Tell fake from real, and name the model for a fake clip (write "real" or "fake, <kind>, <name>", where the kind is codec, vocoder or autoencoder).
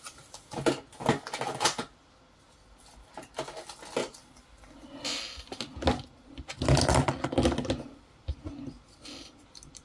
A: real